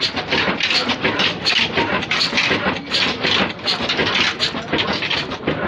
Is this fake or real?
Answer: real